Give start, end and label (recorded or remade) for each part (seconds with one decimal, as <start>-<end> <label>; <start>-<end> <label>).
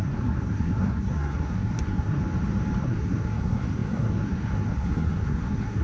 0.0-2.2 remade; 2.2-2.8 recorded; 2.8-5.8 remade